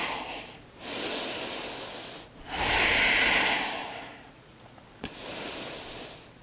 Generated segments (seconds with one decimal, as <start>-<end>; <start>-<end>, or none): 3.8-4.8